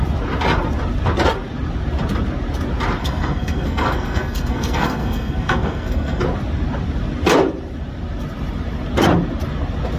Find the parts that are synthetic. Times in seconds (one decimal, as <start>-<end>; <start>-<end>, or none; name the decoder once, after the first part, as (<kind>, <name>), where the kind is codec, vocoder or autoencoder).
3.0-6.2 (codec, SNAC)